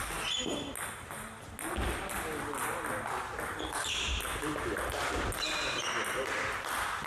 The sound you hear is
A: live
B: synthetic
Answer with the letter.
A